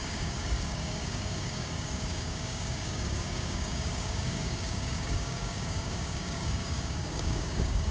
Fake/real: fake